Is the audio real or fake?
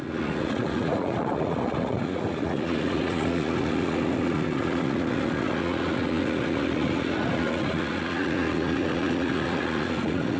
fake